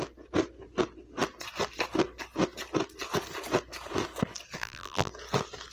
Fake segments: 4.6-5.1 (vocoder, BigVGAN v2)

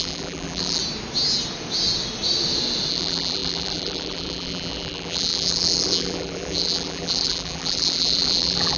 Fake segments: 0.0-0.8 (vocoder, BigVGAN v2); 2.9-8.8

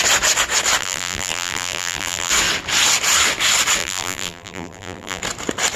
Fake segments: 0.8-2.3 (vocoder, BigVGAN v2); 3.8-5.2

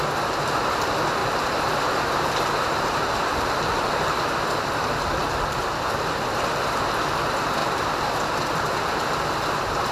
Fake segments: 1.2-4.2 (vocoder, BigVGAN v2); 7.6-9.0

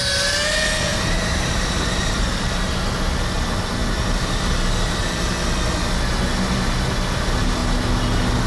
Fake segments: 0.9-2.7 (vocoder, BigVGAN v2)

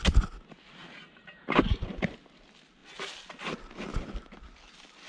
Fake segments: 0.8-2.0 (vocoder, BigVGAN v2)

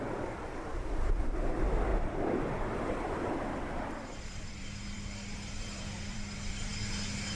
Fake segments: 0.0-6.7 (vocoder, BigVGAN v2)